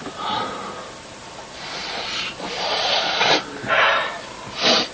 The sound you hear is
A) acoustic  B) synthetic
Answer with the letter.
B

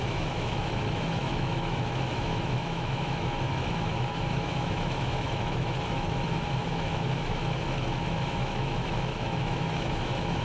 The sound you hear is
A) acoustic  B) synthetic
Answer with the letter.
B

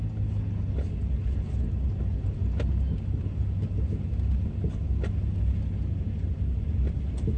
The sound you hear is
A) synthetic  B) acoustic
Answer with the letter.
B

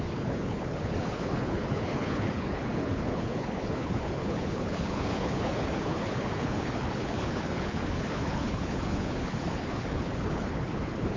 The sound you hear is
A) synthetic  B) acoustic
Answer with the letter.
A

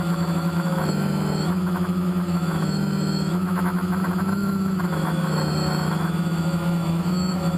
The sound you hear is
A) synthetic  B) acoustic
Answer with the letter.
A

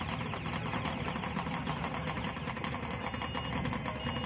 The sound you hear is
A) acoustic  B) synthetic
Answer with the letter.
A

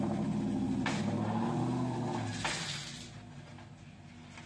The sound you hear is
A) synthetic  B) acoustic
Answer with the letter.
B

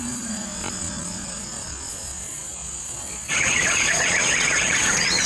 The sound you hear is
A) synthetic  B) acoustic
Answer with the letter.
A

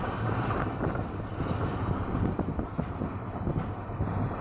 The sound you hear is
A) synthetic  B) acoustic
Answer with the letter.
B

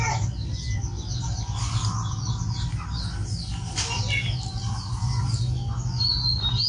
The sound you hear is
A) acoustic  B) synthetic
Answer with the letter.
A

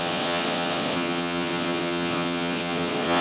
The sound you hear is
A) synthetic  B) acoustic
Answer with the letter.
A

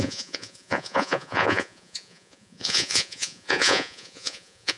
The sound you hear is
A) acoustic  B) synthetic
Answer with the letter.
B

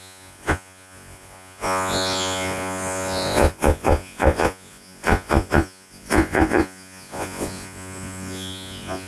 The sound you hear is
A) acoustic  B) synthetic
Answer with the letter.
B